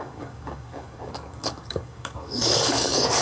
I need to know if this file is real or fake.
fake